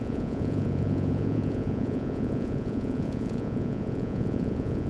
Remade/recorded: remade